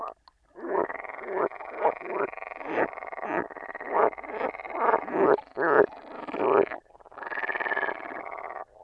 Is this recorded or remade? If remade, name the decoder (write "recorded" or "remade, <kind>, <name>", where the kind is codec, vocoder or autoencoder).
recorded